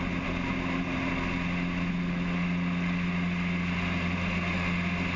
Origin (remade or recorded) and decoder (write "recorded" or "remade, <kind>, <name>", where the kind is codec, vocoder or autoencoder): recorded